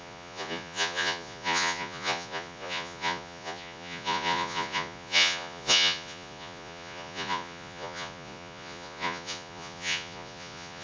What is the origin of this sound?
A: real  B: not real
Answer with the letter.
B